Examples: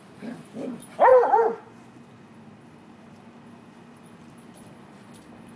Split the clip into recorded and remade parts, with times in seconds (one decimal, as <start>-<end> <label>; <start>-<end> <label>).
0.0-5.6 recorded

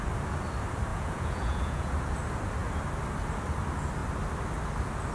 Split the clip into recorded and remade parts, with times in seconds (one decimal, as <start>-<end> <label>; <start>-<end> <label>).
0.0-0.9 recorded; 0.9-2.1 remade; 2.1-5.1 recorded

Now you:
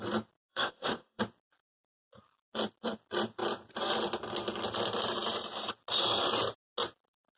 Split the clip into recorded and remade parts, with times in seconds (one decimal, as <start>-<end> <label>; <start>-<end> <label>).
0.0-0.5 recorded; 0.5-1.2 remade; 1.2-7.4 recorded

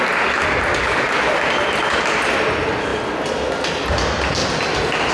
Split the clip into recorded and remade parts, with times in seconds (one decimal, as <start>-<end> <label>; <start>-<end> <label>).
0.0-0.7 recorded; 0.7-1.3 remade; 1.3-5.1 recorded